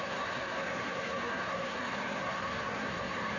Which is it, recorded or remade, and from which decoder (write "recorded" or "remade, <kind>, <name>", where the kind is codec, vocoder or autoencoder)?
remade, codec, SNAC